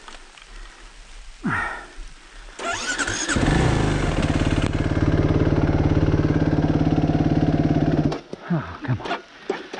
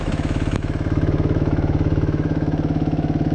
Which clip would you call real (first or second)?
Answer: first